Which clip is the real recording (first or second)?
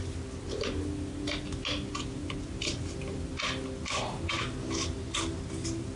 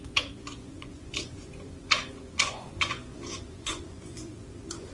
first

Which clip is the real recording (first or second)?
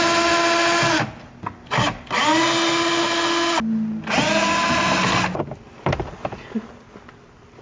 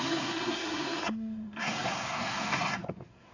first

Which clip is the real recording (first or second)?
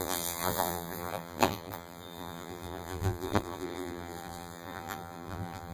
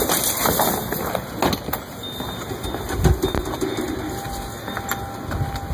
second